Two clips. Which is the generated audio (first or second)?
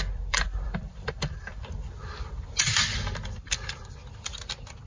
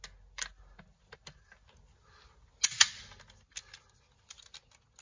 first